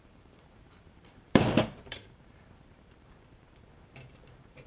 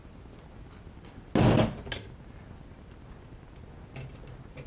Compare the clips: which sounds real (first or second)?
second